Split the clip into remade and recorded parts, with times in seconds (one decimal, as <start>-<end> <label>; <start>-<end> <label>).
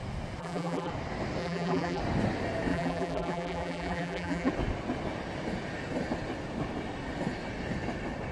0.0-0.4 recorded; 0.4-0.9 remade; 0.9-1.4 recorded; 1.4-2.0 remade; 2.0-2.7 recorded; 2.7-4.5 remade; 4.5-8.3 recorded